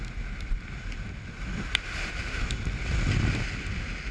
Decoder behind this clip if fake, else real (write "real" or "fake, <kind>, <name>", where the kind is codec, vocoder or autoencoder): real